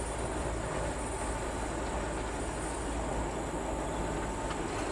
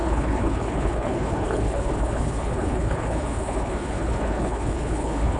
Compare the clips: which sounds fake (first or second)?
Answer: second